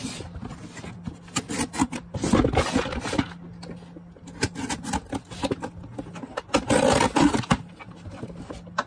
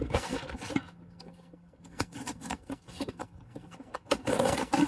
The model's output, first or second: second